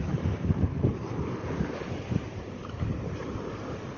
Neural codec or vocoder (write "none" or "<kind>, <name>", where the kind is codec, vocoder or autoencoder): none